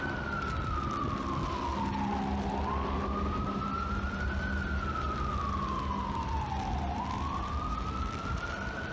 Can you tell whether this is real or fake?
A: real